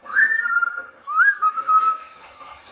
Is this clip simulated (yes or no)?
yes